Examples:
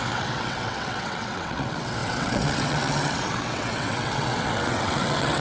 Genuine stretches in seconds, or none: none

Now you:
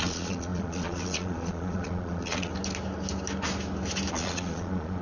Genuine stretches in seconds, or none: 2.5-4.1